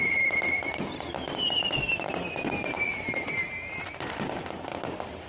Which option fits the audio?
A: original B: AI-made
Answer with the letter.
B